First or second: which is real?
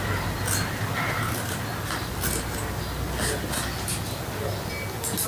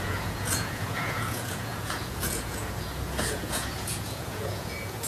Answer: first